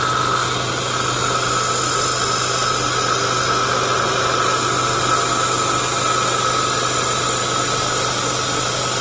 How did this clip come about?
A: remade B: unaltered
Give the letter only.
B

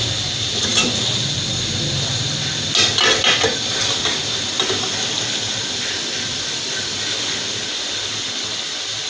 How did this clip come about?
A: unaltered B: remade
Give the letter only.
A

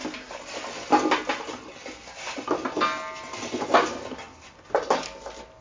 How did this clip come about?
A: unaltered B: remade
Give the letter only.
A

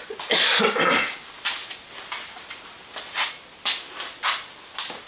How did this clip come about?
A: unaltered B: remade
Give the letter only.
A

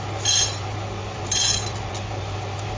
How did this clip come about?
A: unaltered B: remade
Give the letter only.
A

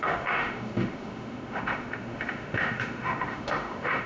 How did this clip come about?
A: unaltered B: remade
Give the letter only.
B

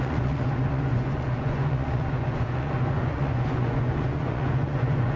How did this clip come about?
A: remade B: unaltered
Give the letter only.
A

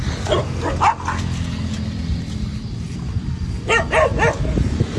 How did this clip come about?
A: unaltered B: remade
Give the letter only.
A